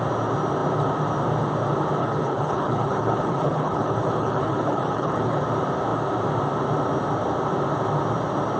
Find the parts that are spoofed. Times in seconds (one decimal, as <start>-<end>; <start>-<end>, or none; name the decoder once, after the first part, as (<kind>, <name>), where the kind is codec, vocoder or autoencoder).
2.0-5.4 (codec, HILCodec)